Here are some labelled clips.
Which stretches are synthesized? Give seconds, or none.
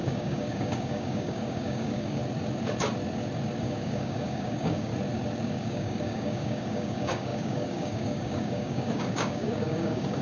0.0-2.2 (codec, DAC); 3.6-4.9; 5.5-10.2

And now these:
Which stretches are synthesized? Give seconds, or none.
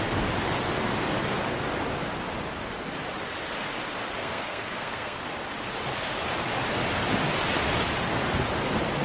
4.2-5.2 (codec, SNAC)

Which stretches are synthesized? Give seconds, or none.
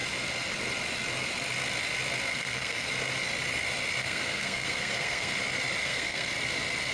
2.3-2.9 (codec, SNAC); 4.0-5.3; 5.8-6.3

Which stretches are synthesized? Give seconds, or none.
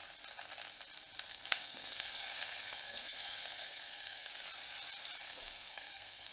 1.3-4.3 (codec, SNAC); 5.2-6.3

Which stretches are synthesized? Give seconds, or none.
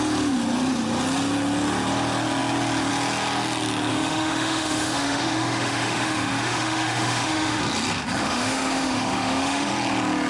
3.9-7.6 (autoencoder, DAC-VAE); 8.2-9.7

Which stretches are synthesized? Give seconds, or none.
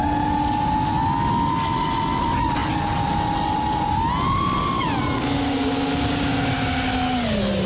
none